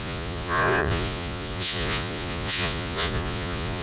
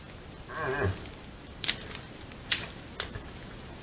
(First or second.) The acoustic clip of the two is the second